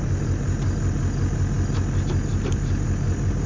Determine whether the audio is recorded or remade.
recorded